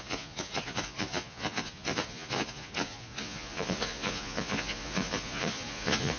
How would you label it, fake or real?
fake